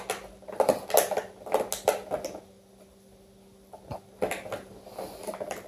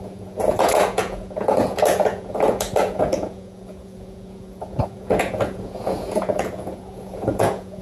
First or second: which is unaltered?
first